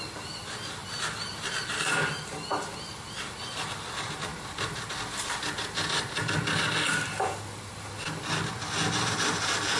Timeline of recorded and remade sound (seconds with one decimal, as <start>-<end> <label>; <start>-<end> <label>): 0.0-9.8 recorded